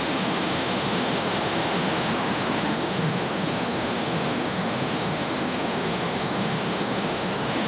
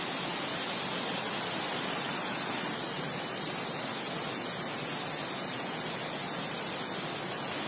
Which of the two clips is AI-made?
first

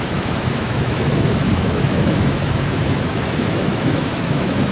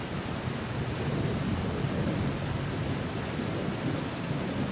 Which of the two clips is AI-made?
first